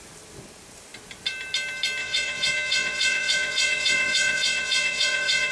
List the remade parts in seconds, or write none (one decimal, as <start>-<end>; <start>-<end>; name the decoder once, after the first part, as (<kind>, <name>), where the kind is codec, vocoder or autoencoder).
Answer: 2.0-5.5 (vocoder, Vocos)